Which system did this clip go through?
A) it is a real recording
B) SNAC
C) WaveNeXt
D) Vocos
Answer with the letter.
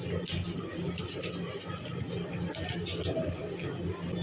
A